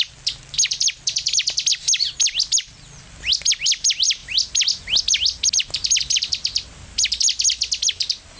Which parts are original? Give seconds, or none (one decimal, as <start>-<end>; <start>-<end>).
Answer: 0.0-8.4